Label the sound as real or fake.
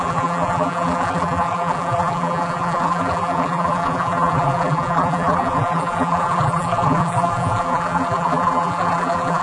fake